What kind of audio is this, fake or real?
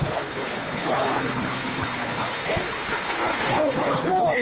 fake